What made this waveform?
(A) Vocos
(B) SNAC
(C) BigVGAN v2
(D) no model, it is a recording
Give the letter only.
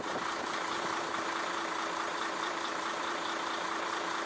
C